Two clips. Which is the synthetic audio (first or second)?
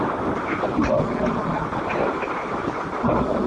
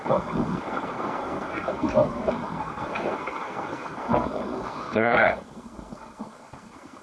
second